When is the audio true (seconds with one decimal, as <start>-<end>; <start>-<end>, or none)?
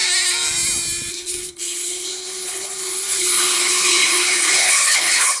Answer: 0.0-1.1